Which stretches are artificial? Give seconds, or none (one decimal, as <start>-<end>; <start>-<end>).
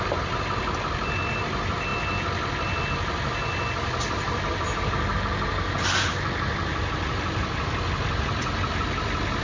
none